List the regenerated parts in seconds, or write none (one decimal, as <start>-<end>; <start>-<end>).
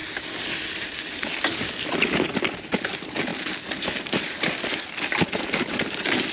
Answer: none